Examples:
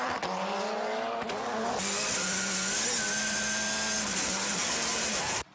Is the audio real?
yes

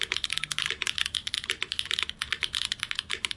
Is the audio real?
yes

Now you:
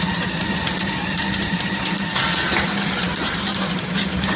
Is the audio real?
yes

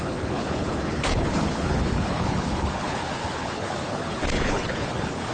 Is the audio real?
no